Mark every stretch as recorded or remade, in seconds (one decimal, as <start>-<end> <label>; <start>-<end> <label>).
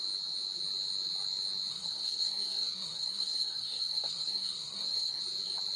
0.0-1.7 recorded; 1.7-5.2 remade; 5.2-5.8 recorded